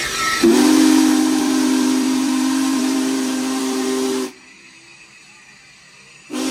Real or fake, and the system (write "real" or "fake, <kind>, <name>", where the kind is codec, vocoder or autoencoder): fake, vocoder, BigVGAN v2